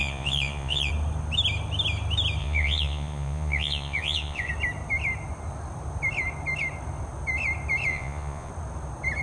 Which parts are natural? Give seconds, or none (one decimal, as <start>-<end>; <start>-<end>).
0.9-2.4; 4.5-7.9; 8.5-9.2